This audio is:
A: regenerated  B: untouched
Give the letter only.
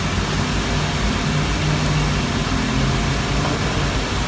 B